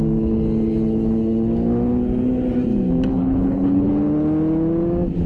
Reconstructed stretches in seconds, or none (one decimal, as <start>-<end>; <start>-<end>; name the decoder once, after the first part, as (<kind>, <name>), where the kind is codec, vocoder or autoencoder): 3.1-3.9 (codec, HILCodec)